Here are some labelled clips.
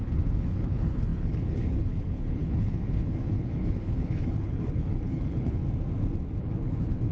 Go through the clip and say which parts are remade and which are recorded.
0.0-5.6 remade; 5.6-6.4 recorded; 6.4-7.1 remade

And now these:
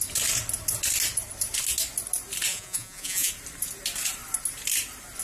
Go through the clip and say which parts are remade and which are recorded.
0.0-2.5 recorded; 2.5-3.3 remade; 3.3-5.2 recorded

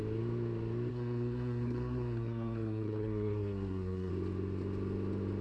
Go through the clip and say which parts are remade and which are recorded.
0.0-0.9 recorded; 0.9-4.1 remade; 4.1-5.4 recorded

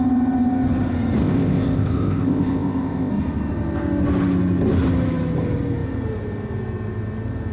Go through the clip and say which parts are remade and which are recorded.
0.0-1.2 recorded; 1.2-3.1 remade; 3.1-7.5 recorded

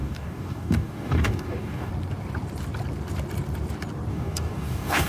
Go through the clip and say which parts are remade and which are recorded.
0.0-1.9 remade; 1.9-4.1 recorded; 4.1-5.1 remade

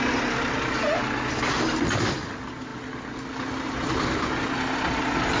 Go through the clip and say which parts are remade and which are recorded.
0.0-5.4 recorded

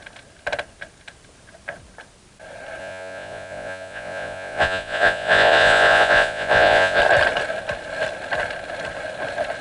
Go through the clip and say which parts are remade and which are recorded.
0.0-2.8 recorded; 2.8-7.0 remade; 7.0-9.6 recorded

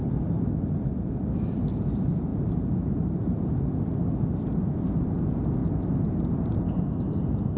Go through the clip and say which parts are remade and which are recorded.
0.0-2.3 recorded; 2.3-3.6 remade; 3.6-7.6 recorded